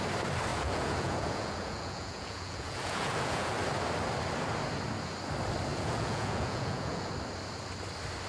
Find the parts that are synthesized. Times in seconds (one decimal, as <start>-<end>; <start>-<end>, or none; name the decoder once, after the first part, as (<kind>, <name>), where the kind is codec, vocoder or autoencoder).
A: 0.5-3.5 (vocoder, Vocos); 5.7-7.1